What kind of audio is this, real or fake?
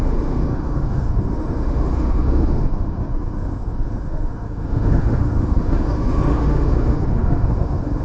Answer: fake